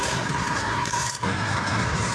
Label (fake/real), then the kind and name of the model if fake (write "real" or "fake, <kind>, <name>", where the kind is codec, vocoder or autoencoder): fake, codec, SNAC